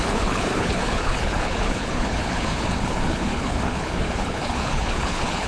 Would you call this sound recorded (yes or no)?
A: no